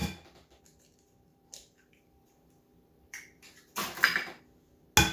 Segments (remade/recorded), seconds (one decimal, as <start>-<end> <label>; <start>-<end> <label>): 0.0-0.6 remade; 0.6-1.3 recorded; 1.3-4.4 remade; 4.4-5.1 recorded